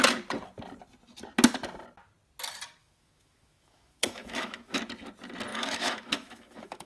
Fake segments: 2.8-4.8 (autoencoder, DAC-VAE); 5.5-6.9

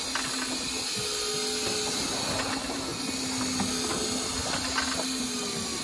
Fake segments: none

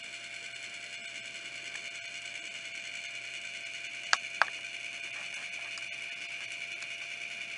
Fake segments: none